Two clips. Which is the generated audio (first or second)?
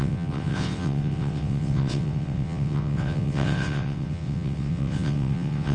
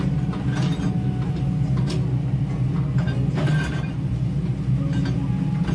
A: first